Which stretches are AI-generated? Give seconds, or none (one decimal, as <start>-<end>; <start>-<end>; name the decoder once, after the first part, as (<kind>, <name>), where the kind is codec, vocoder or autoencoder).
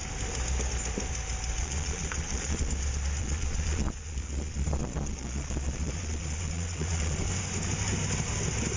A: 1.6-2.7 (vocoder, Vocos); 3.2-7.2